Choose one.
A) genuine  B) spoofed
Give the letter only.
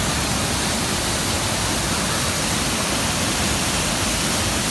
A